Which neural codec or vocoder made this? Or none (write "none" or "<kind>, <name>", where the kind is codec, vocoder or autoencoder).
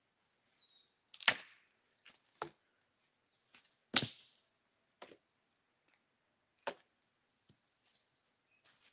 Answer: none